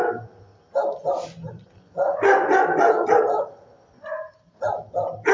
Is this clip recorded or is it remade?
recorded